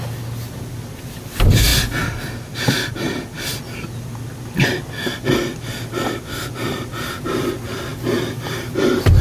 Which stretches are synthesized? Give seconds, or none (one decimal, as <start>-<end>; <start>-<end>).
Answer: 7.9-8.4